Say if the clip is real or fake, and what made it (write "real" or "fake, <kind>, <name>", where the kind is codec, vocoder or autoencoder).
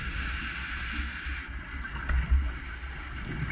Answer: real